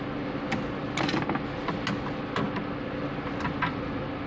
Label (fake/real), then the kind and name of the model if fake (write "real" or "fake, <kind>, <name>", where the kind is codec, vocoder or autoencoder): real